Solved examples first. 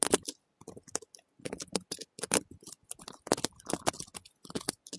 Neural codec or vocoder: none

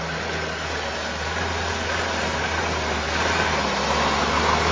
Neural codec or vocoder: none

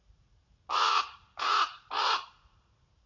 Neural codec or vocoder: vocoder, Vocos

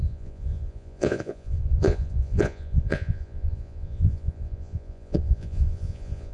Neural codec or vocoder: vocoder, Vocos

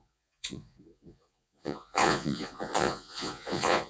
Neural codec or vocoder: vocoder, Vocos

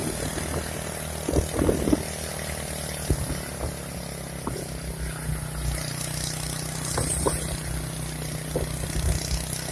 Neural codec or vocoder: none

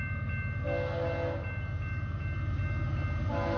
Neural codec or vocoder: none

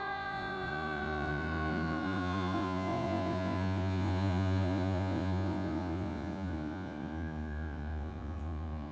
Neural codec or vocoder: vocoder, Vocos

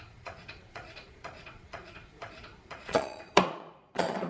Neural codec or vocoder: vocoder, Vocos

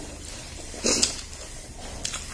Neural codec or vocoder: none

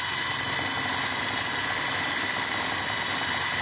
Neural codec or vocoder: none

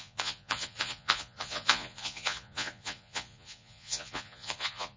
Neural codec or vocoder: vocoder, Vocos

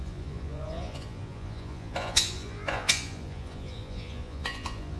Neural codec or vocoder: vocoder, Vocos